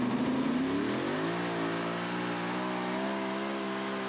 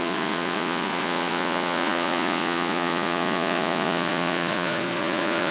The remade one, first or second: second